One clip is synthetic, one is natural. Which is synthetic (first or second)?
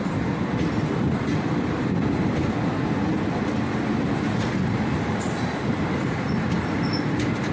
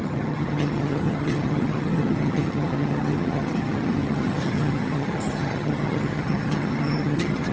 second